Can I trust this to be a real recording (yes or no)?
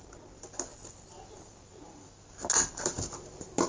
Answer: yes